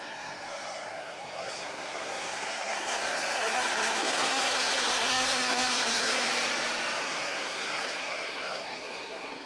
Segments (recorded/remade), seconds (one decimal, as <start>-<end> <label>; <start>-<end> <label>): 0.0-6.3 remade; 6.3-7.0 recorded; 7.0-9.5 remade